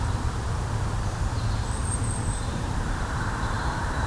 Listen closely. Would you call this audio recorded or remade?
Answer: remade